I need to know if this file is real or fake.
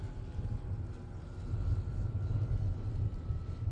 real